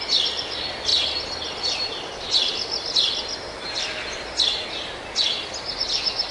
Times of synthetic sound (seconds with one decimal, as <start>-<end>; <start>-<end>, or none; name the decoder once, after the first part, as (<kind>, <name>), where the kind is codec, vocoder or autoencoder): none